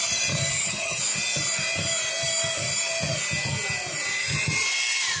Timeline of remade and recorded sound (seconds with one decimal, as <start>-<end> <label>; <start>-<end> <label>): 0.0-0.5 recorded; 0.5-1.0 remade; 1.0-5.2 recorded